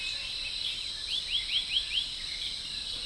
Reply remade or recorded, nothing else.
remade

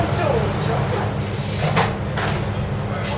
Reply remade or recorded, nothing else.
recorded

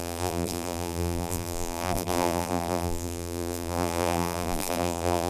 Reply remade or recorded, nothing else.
remade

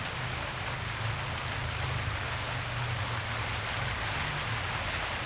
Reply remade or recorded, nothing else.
recorded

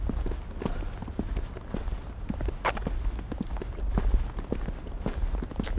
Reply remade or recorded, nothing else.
recorded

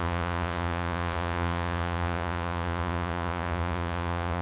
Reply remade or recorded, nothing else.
remade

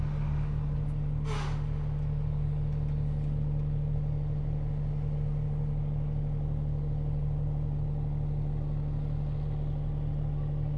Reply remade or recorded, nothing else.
recorded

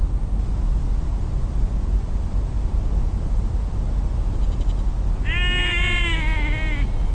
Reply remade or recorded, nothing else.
recorded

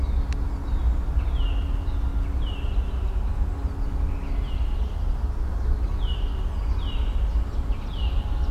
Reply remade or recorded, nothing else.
recorded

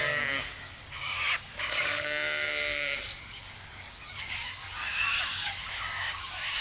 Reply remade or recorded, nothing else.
remade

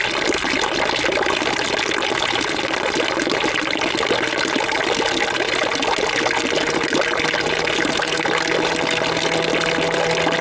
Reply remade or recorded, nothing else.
recorded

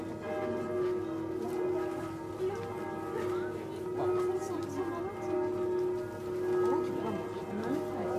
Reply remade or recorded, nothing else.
recorded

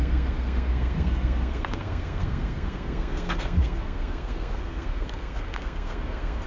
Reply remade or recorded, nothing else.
remade